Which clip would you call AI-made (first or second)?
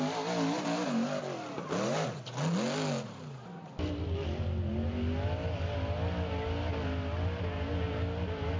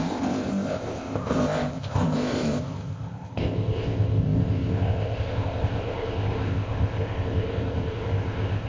second